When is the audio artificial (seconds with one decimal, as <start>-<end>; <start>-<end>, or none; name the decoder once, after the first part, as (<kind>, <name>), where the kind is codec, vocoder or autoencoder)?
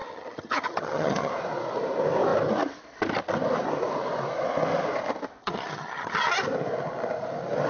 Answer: 0.0-1.3 (vocoder, HiFi-GAN); 5.4-6.3